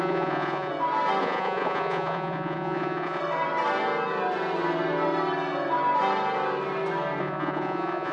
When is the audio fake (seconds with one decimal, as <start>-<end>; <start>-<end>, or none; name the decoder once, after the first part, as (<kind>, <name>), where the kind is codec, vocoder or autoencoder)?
0.0-0.7 (vocoder, Vocos); 1.2-3.2; 7.2-8.1